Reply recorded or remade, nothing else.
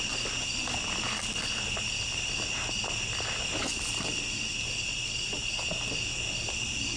recorded